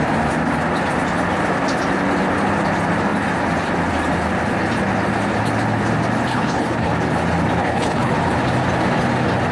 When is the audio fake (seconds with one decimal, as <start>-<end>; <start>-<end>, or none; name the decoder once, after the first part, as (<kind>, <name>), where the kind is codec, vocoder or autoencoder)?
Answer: 6.3-6.9 (codec, HILCodec); 7.6-8.1